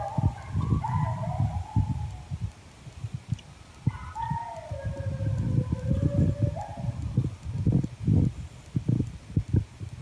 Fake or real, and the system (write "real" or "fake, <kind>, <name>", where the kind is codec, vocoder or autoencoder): real